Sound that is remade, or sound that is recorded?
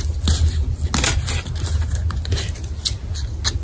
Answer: recorded